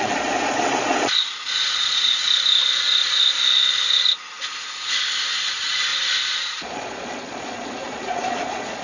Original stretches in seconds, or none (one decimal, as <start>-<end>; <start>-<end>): 2.2-5.5; 5.9-6.4